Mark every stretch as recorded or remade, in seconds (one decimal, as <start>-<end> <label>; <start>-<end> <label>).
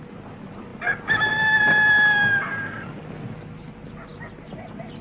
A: 0.0-5.0 recorded